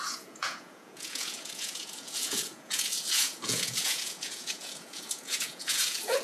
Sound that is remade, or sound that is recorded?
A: remade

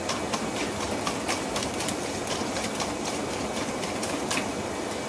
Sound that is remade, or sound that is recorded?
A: remade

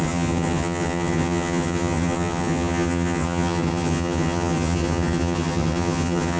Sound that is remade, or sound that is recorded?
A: remade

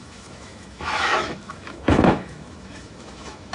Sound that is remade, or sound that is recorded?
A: remade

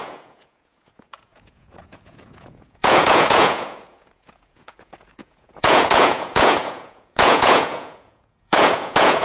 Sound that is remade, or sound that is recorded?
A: remade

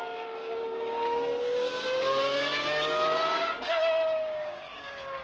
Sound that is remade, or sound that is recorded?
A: remade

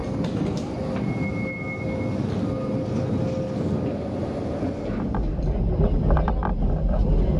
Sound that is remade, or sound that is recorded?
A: recorded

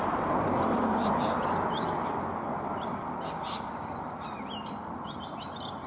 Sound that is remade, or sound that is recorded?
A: recorded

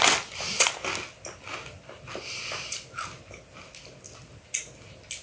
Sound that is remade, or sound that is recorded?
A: recorded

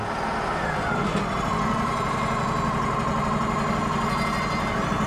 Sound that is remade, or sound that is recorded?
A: recorded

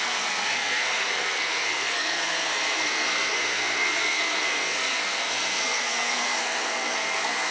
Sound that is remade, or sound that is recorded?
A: remade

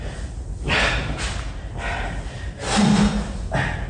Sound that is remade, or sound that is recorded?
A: recorded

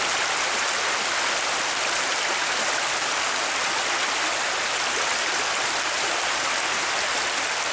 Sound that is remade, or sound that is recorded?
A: recorded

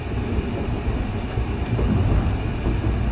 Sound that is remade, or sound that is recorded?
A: recorded